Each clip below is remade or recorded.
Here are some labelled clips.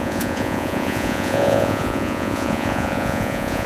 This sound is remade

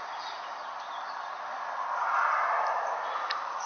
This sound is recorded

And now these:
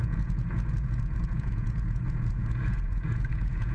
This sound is remade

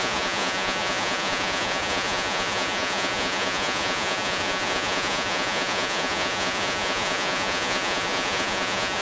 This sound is remade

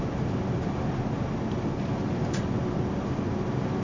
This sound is recorded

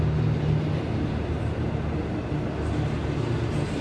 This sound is recorded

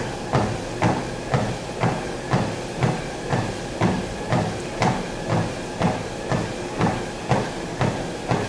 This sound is recorded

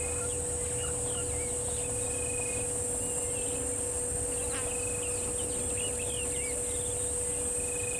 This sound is recorded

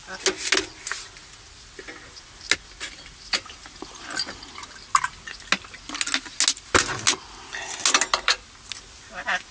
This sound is recorded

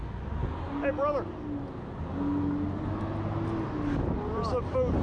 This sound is recorded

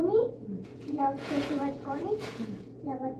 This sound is remade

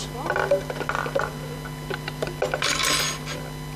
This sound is recorded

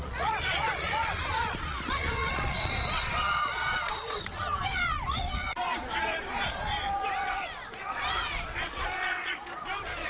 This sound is remade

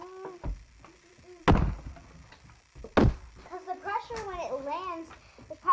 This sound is recorded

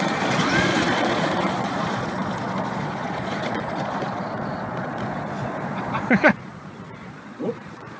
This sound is remade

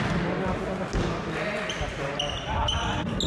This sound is recorded